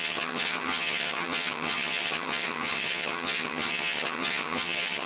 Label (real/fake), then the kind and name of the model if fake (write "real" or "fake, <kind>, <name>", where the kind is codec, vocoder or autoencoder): fake, vocoder, HiFi-GAN